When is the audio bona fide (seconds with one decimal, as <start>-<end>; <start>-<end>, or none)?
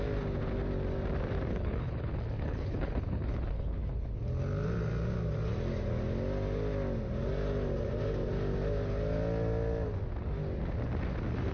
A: 0.0-1.5; 4.2-11.5